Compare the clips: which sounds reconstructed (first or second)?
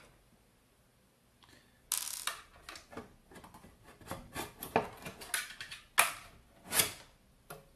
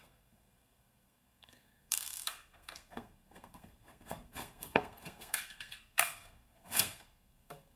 second